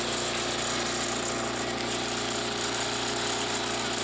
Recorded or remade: recorded